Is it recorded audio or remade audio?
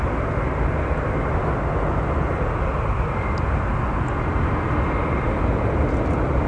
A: recorded